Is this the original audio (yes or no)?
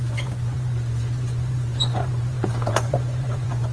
no